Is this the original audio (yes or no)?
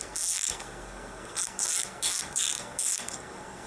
no